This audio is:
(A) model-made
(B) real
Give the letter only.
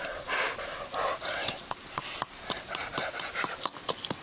B